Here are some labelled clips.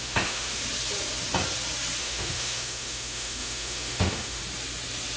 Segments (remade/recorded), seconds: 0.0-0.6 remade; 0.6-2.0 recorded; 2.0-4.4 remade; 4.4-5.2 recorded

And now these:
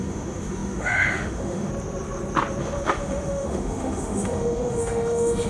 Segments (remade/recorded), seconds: 0.0-1.7 remade; 1.7-2.6 recorded; 2.6-5.5 remade